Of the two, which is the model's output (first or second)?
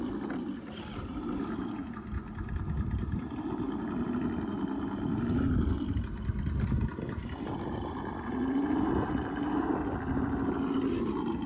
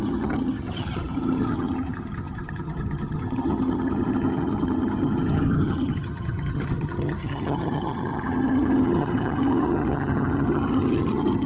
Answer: second